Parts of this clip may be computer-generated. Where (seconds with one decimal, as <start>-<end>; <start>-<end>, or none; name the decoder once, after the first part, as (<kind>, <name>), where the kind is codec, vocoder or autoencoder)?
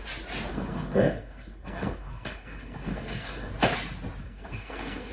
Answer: 0.5-3.5 (codec, SNAC); 4.2-5.1